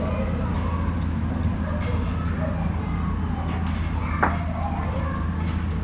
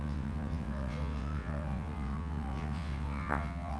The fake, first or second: second